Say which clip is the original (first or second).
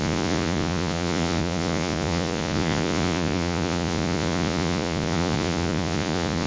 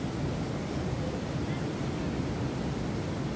second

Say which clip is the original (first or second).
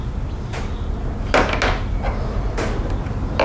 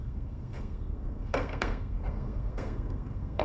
first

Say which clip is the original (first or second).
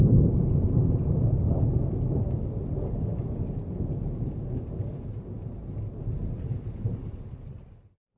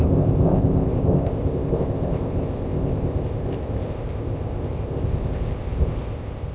first